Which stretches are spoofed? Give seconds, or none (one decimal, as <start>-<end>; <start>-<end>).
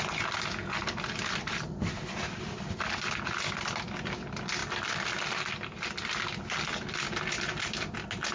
none